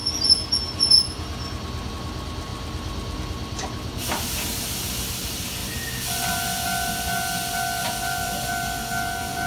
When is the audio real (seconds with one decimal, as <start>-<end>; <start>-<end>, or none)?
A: 0.0-7.8; 8.5-9.5